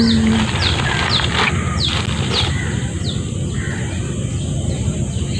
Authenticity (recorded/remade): recorded